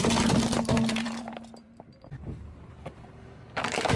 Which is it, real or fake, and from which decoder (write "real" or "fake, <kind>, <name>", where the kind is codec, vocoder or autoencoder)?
fake, vocoder, BigVGAN v2